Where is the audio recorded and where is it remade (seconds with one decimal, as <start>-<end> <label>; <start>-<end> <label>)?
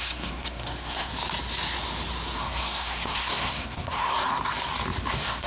0.0-1.1 remade; 1.1-2.4 recorded; 2.4-4.1 remade; 4.1-5.1 recorded; 5.1-5.5 remade